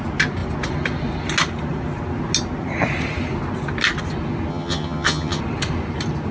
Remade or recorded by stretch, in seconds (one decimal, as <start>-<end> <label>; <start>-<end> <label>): 0.0-4.5 recorded; 4.5-5.4 remade; 5.4-6.3 recorded